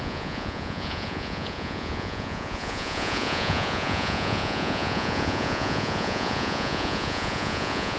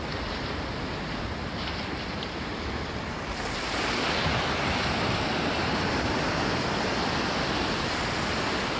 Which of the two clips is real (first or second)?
second